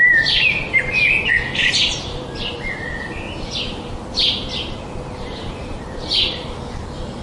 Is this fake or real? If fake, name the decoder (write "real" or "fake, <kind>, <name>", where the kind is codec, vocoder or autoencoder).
real